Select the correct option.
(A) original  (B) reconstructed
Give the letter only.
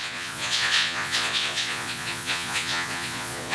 B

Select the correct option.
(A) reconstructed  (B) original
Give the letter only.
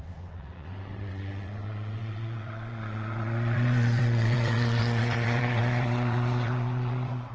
A